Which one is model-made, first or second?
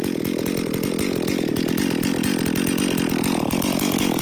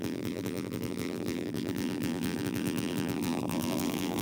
second